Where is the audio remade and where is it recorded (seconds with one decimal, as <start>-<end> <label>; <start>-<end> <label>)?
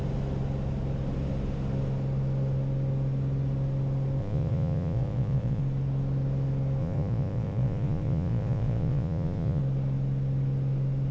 0.0-4.2 recorded; 4.2-5.6 remade; 5.6-6.8 recorded; 6.8-9.6 remade; 9.6-11.1 recorded